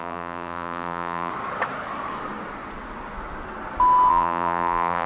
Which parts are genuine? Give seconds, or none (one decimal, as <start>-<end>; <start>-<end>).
1.3-4.1

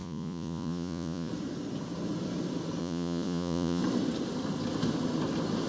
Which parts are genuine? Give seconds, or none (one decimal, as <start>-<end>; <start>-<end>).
1.3-2.8; 3.8-5.7

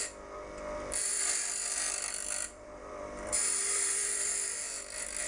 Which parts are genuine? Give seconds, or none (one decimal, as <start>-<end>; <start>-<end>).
0.0-1.1; 4.3-5.3

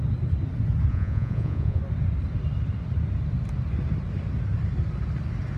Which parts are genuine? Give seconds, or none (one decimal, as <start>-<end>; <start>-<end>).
0.0-0.9; 1.8-5.6

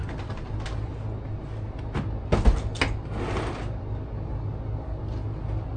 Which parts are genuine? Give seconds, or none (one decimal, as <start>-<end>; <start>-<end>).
0.0-5.8

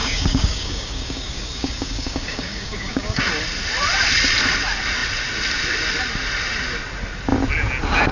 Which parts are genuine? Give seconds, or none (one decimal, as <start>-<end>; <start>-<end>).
3.2-8.1